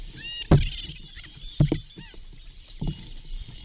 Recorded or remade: recorded